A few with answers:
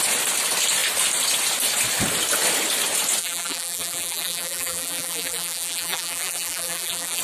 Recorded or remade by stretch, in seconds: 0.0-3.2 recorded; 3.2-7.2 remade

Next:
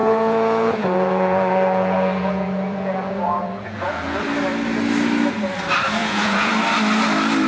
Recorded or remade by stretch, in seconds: 0.0-4.2 remade; 4.2-6.0 recorded; 6.0-6.5 remade; 6.5-7.5 recorded

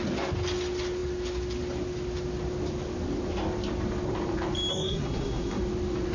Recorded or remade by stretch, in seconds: 0.0-4.7 recorded; 4.7-5.6 remade; 5.6-6.1 recorded

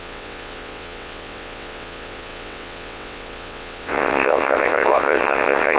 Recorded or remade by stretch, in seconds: 0.0-5.8 remade